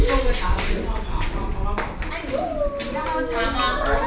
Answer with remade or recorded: recorded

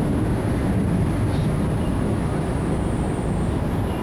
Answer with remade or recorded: recorded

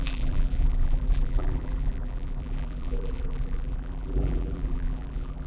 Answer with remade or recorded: remade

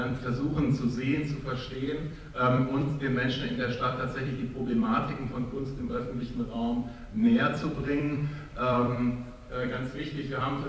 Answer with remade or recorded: remade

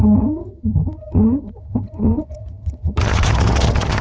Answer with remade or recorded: remade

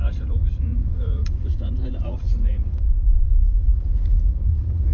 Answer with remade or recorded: remade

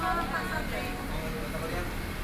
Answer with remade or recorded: recorded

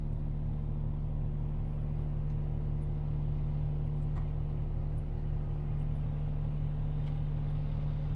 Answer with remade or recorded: recorded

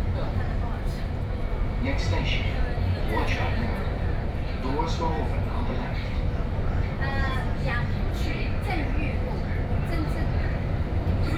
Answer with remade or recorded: recorded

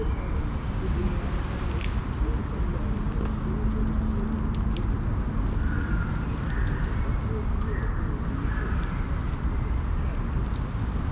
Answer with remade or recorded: recorded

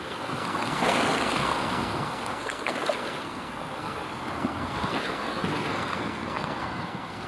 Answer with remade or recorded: remade